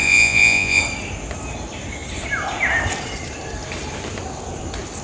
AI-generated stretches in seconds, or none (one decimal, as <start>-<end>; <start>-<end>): 0.0-0.8